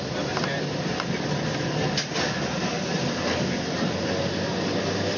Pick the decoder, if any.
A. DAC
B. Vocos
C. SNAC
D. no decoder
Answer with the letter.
D